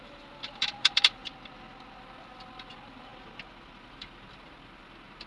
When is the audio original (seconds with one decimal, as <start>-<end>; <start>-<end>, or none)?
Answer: 1.2-2.0; 3.1-3.8